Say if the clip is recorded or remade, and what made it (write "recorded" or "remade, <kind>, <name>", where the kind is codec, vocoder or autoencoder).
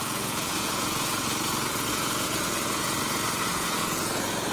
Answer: remade, vocoder, Vocos